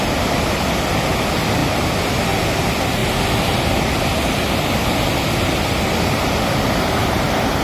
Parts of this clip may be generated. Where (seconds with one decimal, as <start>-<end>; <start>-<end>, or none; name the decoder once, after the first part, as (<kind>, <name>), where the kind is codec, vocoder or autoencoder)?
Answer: 3.0-4.5 (vocoder, BigVGAN v2)